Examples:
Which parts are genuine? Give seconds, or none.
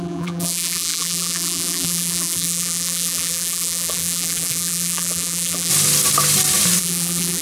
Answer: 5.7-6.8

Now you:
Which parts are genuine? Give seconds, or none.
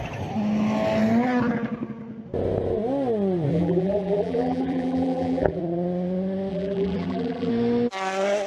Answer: 0.0-3.5; 5.6-6.5; 7.5-8.5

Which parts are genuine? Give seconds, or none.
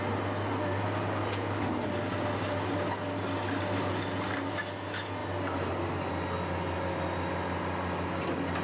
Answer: 0.0-8.6